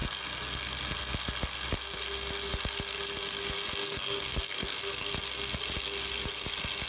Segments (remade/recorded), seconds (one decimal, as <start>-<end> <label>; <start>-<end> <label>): 0.0-3.9 recorded; 3.9-5.1 remade; 5.1-6.9 recorded